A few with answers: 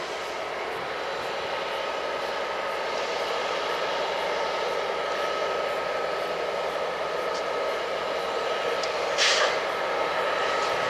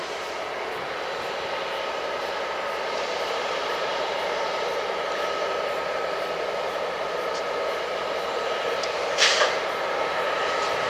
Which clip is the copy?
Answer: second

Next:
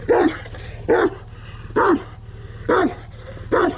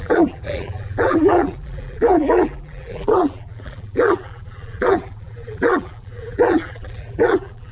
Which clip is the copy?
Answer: second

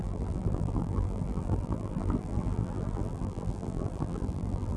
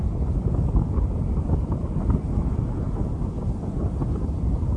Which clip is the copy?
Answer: first